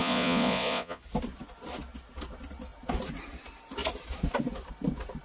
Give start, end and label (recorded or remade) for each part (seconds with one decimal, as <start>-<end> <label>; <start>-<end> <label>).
0.0-1.0 remade; 1.0-5.2 recorded